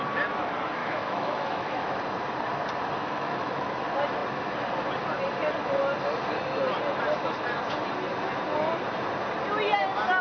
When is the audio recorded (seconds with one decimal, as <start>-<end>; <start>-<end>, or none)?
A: 0.0-0.8; 2.0-3.0; 3.7-10.2